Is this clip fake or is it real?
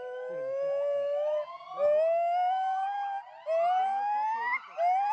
real